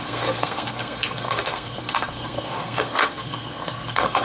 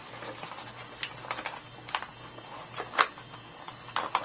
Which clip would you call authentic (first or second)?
second